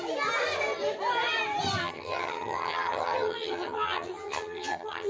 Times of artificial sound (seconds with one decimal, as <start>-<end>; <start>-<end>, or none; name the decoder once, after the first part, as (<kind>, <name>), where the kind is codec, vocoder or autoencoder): 1.8-5.1 (vocoder, HiFi-GAN)